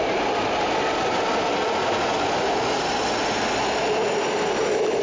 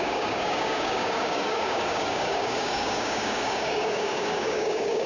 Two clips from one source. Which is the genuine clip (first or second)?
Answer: first